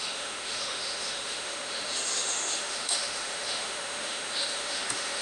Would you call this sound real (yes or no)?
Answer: no